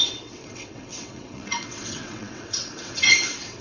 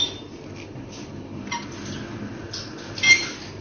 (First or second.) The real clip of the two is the second